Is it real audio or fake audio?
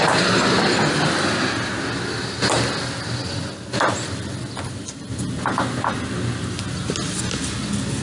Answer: real